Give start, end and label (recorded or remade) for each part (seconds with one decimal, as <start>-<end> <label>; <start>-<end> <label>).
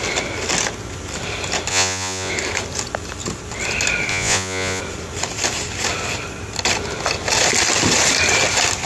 0.0-1.7 recorded; 1.7-2.3 remade; 2.3-4.1 recorded; 4.1-4.8 remade; 4.8-8.9 recorded